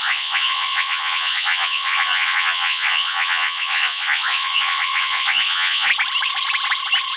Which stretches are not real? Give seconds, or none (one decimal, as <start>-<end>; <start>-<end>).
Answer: 0.0-5.9